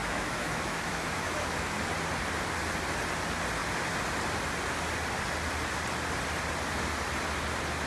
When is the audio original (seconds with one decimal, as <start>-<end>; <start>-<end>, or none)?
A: 1.8-7.9